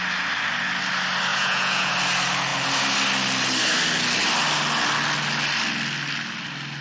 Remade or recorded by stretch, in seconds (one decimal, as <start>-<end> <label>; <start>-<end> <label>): 0.0-1.3 recorded; 1.3-1.9 remade; 1.9-6.8 recorded